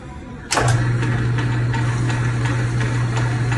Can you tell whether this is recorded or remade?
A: recorded